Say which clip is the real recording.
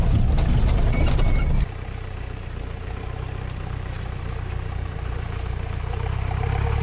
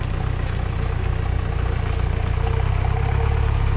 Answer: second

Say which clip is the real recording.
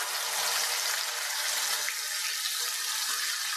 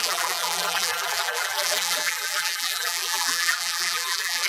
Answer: first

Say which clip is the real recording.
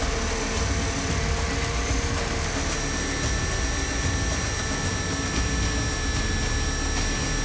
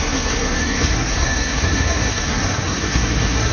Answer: first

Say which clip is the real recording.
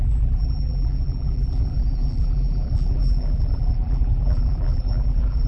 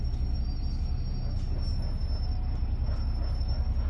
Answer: second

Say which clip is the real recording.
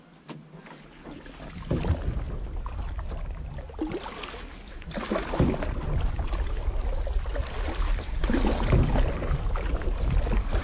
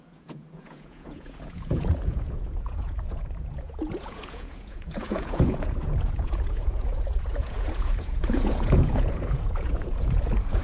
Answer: first